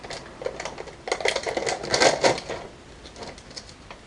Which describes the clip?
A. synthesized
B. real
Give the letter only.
B